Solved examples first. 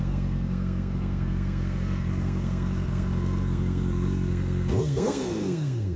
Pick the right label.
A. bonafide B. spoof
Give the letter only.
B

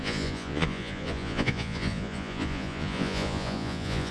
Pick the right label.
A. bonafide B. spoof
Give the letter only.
B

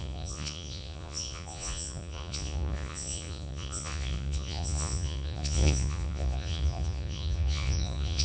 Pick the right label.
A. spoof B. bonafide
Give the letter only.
A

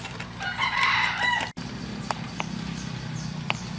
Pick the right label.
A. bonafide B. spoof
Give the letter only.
A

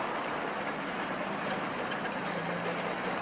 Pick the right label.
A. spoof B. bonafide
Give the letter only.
A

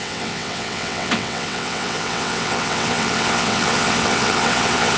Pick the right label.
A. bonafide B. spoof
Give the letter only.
B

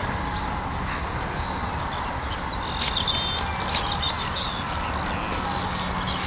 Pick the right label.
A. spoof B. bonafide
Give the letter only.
B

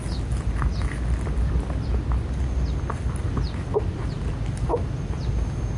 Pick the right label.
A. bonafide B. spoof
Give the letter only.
A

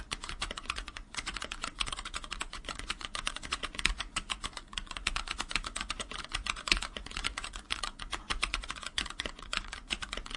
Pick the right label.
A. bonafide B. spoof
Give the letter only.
B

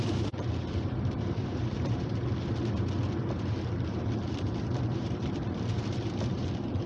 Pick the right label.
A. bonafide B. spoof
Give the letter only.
B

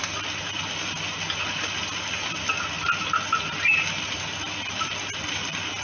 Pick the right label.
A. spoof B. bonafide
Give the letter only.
B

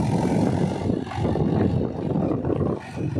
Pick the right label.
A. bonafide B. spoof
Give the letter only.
A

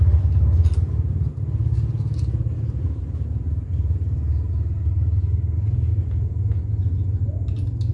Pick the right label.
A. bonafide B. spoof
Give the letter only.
A